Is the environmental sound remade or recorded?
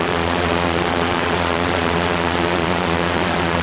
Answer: remade